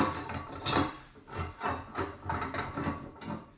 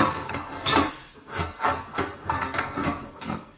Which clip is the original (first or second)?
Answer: first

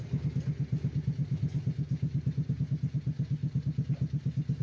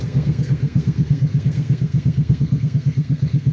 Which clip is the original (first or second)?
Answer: first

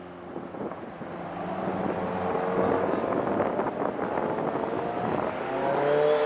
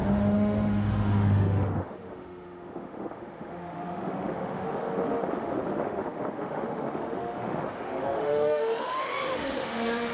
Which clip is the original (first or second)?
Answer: first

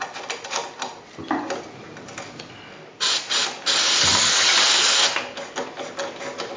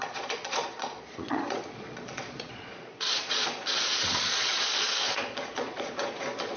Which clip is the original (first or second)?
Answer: first